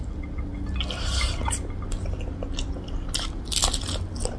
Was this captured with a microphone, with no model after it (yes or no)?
yes